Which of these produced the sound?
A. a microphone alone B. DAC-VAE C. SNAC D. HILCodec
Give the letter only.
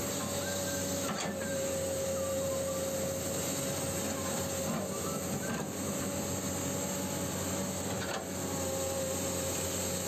A